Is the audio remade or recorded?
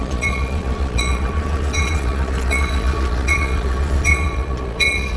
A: remade